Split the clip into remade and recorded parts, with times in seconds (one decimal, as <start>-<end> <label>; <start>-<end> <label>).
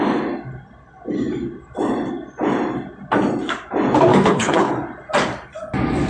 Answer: 0.0-4.1 recorded; 4.1-4.7 remade; 4.7-6.1 recorded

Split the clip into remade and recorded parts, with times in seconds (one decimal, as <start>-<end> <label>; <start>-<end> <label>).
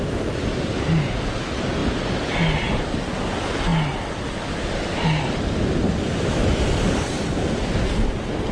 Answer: 0.0-8.5 recorded